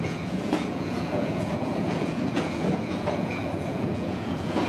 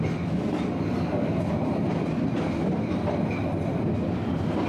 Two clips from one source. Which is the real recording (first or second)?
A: second